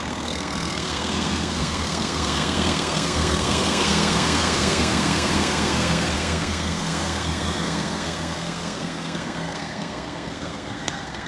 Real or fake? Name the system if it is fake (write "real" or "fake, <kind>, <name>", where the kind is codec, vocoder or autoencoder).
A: fake, codec, SNAC